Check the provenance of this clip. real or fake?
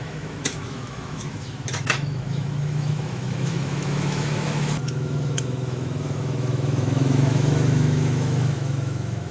fake